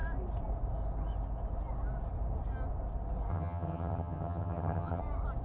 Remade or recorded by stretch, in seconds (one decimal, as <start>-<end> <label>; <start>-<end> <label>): 0.0-3.3 recorded; 3.3-5.0 remade; 5.0-5.4 recorded